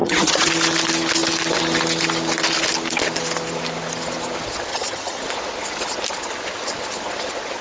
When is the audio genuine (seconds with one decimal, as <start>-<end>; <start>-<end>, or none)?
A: 0.5-4.7; 5.2-7.6